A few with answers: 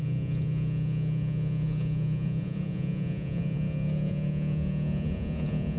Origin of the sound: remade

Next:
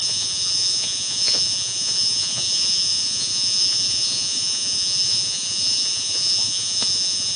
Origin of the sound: remade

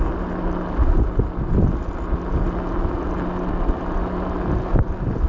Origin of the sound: recorded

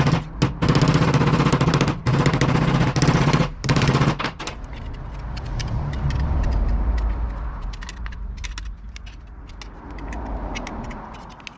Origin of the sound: recorded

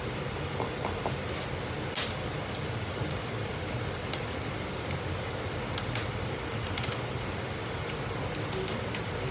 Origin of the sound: recorded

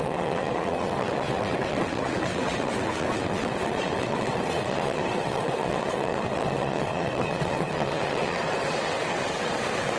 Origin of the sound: remade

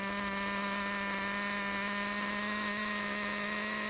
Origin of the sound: recorded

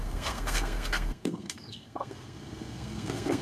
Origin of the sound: remade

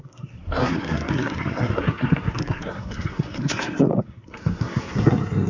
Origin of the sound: remade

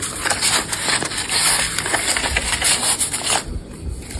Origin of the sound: remade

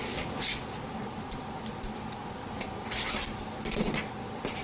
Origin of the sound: recorded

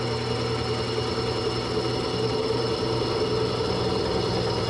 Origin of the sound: recorded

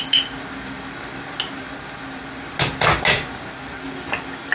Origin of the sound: recorded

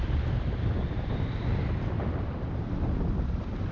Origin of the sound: recorded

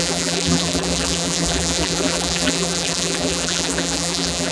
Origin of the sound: remade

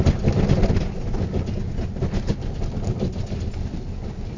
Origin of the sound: recorded